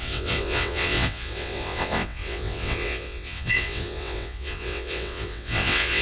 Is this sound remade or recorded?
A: remade